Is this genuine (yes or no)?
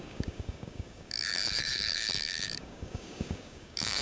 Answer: no